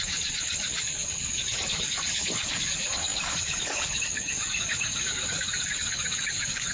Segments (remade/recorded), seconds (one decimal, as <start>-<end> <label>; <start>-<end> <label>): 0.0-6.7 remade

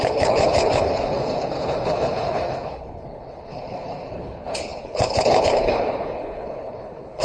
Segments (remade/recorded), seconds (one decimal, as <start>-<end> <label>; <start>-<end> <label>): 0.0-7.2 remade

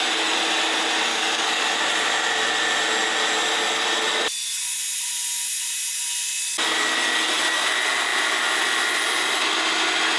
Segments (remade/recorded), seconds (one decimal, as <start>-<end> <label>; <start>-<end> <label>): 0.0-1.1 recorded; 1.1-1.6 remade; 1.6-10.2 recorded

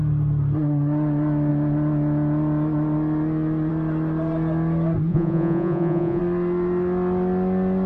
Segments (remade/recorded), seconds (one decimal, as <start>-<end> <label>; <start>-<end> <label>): 0.0-5.1 recorded; 5.1-6.2 remade; 6.2-7.9 recorded